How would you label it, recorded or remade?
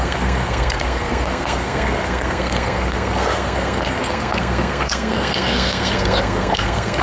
remade